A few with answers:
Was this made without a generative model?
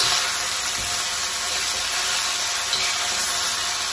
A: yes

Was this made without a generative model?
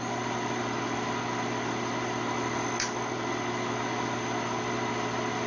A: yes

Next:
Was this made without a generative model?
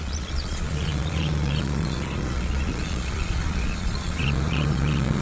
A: no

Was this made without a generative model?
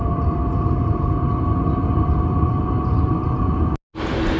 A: yes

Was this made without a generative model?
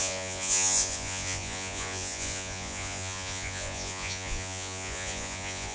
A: no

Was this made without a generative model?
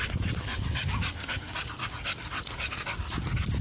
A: yes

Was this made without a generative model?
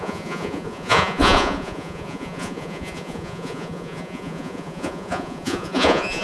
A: no